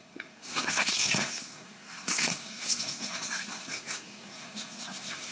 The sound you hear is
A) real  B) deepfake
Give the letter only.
B